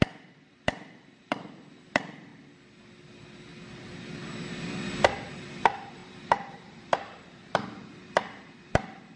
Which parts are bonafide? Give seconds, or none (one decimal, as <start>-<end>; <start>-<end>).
2.3-5.3